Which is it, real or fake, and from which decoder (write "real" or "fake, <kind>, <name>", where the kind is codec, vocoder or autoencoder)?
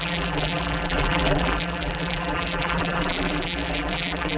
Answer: fake, vocoder, BigVGAN v2